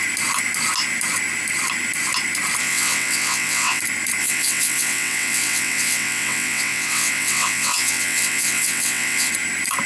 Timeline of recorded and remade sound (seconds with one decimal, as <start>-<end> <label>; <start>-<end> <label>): 0.0-2.6 recorded; 2.6-3.8 remade; 3.8-4.2 recorded; 4.2-9.3 remade; 9.3-9.9 recorded